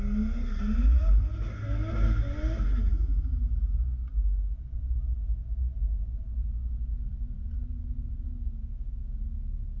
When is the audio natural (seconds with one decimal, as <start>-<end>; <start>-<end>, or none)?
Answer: 0.0-2.9; 3.5-9.8